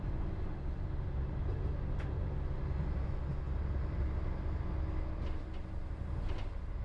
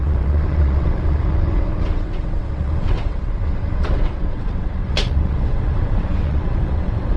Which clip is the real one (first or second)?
first